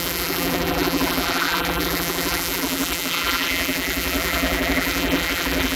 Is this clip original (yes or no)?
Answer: no